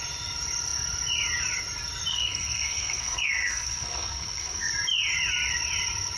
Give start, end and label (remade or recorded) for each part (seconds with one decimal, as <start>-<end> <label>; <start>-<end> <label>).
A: 0.0-2.1 recorded; 2.1-4.7 remade; 4.7-6.2 recorded